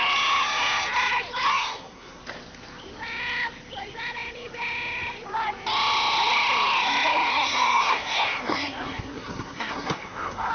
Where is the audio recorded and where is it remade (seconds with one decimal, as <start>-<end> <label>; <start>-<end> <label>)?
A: 0.0-1.5 recorded; 1.5-2.2 remade; 2.2-7.3 recorded; 7.3-10.5 remade